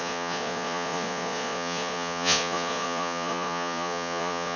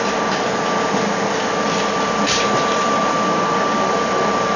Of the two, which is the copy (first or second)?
first